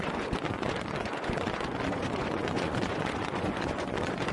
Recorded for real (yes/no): no